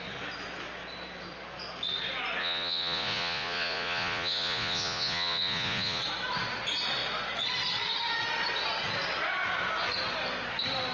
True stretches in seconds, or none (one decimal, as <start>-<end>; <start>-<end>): 0.0-2.4; 6.0-10.9